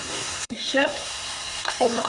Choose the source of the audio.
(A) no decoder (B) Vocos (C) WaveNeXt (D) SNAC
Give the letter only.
D